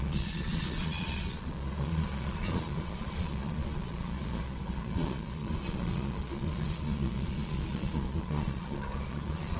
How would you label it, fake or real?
fake